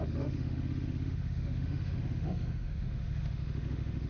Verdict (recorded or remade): remade